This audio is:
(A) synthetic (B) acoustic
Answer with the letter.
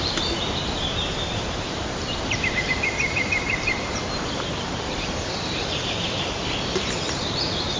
A